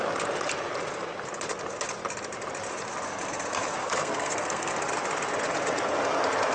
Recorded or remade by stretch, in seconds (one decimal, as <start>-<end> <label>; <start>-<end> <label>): 0.0-3.8 recorded; 3.8-4.7 remade; 4.7-6.5 recorded